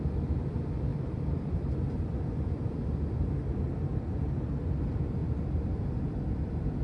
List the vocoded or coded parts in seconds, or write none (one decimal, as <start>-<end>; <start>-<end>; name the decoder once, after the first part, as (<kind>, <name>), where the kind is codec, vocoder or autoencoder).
0.9-3.3 (vocoder, BigVGAN v2); 5.2-6.8